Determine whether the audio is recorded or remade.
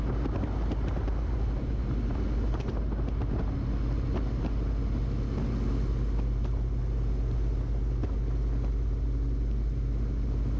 recorded